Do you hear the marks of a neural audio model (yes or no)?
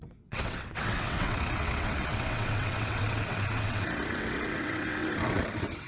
yes